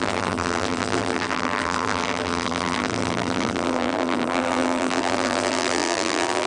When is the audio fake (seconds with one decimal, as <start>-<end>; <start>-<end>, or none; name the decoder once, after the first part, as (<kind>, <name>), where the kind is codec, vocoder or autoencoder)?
0.0-6.5 (vocoder, BigVGAN v2)